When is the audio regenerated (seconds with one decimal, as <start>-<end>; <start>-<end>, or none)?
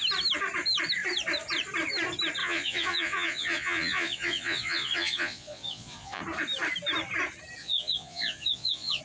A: 2.4-6.2; 7.6-9.0